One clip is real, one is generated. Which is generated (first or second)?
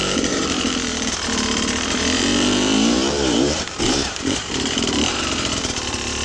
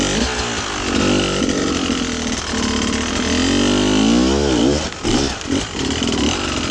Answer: first